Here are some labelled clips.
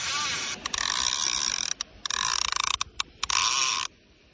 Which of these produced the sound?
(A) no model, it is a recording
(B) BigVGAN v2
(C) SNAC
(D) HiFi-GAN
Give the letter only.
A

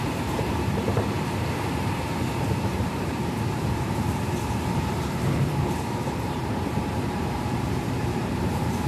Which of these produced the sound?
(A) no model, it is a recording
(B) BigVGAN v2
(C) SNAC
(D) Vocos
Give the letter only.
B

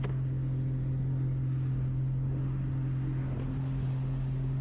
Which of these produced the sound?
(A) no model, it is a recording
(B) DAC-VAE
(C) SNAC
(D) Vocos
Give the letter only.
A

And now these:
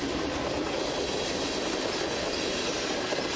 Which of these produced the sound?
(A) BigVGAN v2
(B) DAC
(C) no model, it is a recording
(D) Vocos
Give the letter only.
C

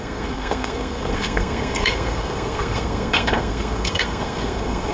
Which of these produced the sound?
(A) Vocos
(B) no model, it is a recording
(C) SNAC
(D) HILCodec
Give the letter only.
C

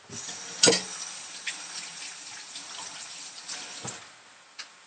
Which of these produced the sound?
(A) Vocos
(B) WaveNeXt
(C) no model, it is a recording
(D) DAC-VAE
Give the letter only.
C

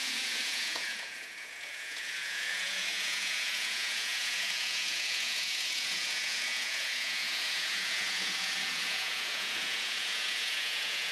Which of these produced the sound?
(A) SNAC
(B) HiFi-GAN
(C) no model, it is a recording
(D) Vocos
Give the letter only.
D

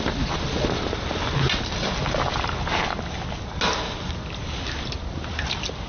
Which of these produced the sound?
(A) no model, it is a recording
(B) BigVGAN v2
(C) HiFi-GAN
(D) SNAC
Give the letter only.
A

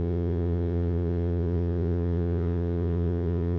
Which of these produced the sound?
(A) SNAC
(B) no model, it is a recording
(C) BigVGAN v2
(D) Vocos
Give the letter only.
D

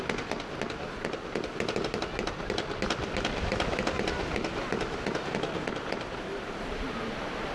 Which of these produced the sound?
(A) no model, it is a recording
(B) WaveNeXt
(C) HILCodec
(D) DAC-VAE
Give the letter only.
A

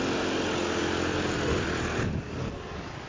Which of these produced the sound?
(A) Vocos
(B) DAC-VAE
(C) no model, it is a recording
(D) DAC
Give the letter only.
C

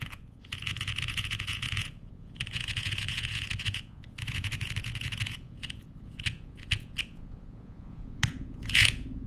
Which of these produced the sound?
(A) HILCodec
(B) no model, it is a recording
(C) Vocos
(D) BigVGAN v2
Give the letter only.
C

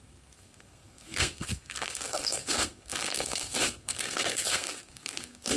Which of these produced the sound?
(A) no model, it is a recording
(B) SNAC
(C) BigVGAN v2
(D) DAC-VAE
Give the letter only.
B